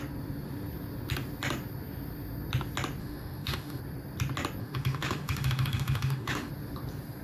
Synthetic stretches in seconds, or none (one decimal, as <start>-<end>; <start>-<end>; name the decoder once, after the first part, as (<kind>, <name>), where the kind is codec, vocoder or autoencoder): 3.0-3.8 (autoencoder, DAC-VAE); 4.6-6.5